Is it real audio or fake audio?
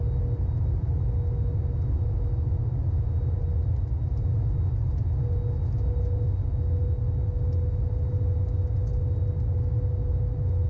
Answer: real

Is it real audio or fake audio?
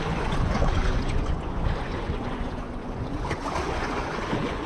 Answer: fake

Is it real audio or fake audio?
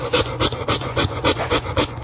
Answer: fake